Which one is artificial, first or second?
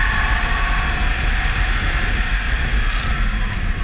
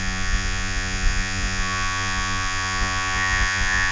second